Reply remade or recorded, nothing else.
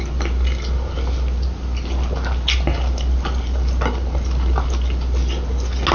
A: recorded